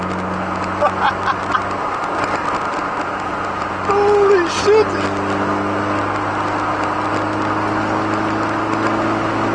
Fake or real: real